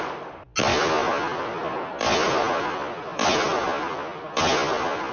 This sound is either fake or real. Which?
real